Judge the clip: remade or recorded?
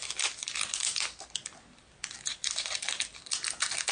recorded